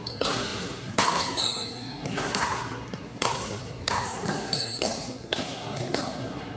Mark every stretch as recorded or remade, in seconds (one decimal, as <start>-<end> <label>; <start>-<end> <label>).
0.0-6.6 remade